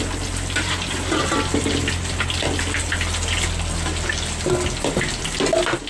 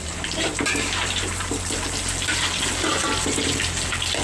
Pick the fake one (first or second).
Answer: second